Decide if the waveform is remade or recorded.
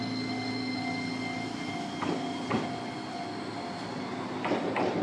recorded